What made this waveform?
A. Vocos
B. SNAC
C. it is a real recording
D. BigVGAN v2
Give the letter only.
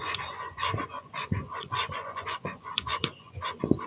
A